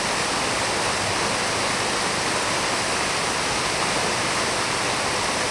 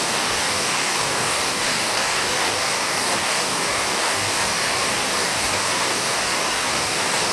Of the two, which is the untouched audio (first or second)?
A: first